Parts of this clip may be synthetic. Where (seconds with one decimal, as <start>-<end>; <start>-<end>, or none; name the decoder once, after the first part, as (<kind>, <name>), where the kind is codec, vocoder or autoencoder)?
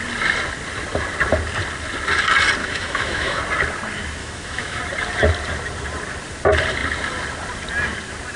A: 2.6-3.4 (autoencoder, DAC-VAE); 4.2-4.8